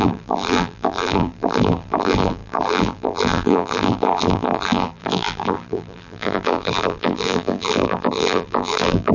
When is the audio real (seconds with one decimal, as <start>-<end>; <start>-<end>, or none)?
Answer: none